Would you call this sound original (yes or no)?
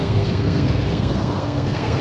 no